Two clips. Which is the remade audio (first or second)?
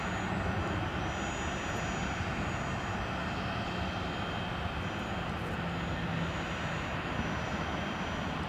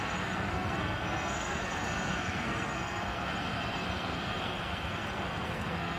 second